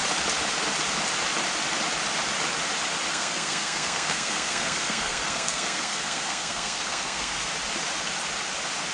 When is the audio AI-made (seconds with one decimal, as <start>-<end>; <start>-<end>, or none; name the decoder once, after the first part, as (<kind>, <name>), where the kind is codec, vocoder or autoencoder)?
3.1-7.5 (codec, SNAC)